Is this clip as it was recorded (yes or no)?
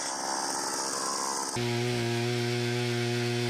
yes